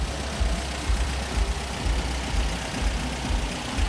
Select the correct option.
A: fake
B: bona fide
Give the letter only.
B